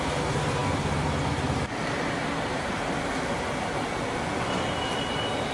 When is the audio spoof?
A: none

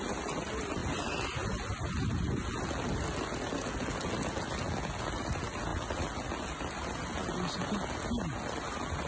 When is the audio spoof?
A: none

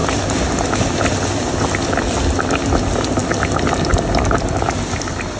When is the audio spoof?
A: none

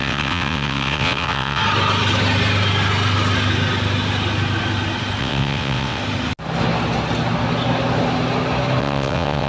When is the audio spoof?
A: 0.0-1.6 (vocoder, WaveNeXt); 5.2-6.0; 8.8-9.5

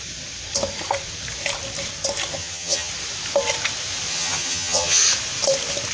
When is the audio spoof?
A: 2.3-2.9 (vocoder, HiFi-GAN); 4.1-5.0

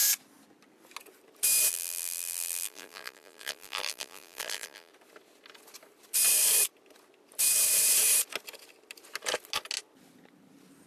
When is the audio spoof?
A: 1.7-4.9 (vocoder, BigVGAN v2)

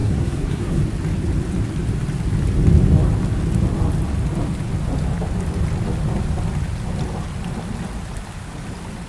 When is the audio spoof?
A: 0.0-0.8 (codec, SNAC)